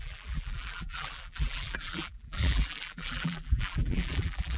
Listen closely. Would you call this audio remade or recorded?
remade